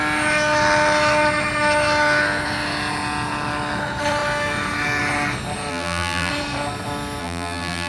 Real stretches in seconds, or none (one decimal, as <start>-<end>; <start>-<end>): 0.0-5.7; 6.3-7.2